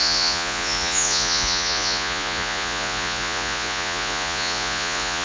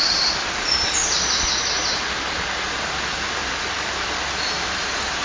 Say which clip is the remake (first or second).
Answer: first